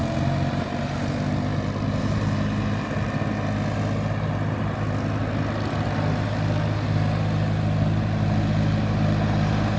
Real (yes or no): yes